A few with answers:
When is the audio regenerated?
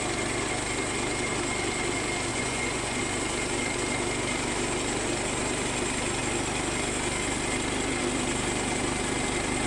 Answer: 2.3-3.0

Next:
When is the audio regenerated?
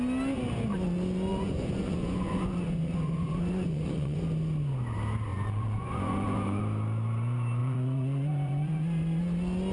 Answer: 1.3-4.2; 5.3-6.6; 7.6-9.2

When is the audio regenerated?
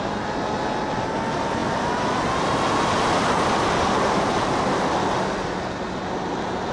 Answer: none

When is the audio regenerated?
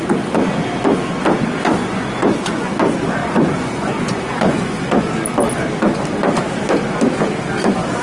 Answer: 1.8-2.7; 3.2-5.1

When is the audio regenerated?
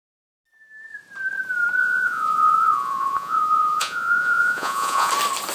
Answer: 1.8-5.1